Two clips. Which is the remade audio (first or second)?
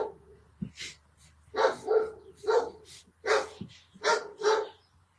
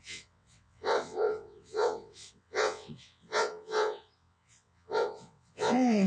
second